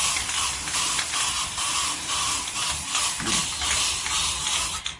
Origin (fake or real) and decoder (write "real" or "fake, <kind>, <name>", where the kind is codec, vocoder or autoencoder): real